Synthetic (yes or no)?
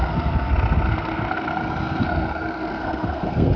yes